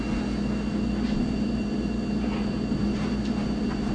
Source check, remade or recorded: recorded